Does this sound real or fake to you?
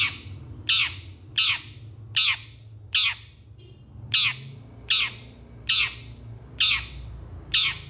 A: real